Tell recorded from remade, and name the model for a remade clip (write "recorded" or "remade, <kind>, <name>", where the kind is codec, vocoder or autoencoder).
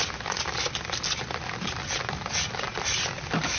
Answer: recorded